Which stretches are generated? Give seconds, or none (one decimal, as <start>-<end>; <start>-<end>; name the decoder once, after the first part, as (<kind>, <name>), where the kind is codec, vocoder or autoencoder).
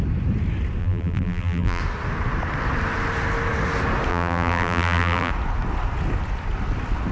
0.8-1.8 (vocoder, BigVGAN v2); 4.1-5.3